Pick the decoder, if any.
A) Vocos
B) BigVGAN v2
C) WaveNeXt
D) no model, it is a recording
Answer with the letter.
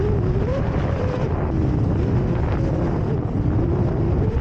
D